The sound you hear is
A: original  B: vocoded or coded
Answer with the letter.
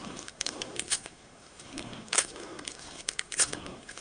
B